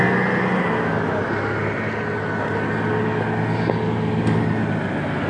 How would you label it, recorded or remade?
recorded